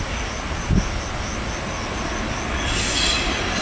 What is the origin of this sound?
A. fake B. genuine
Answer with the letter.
B